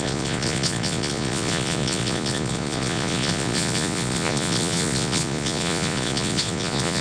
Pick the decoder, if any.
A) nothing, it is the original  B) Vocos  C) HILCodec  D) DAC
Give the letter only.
B